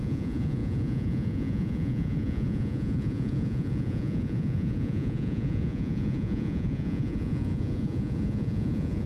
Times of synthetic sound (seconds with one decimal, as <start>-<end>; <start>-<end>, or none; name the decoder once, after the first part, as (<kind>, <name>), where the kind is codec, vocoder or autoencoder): 0.0-9.1 (vocoder, Vocos)